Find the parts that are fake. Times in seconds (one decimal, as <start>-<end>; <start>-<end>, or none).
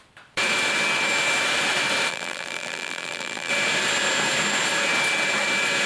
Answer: 2.1-3.5